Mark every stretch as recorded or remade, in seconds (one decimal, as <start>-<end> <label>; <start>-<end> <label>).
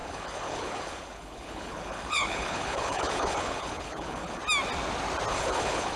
0.0-4.4 remade; 4.4-5.3 recorded; 5.3-6.0 remade